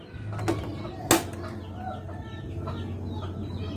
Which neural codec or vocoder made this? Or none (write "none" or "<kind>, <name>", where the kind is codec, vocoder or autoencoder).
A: none